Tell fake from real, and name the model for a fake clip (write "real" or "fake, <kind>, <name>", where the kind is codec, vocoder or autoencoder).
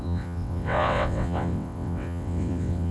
fake, vocoder, WaveNeXt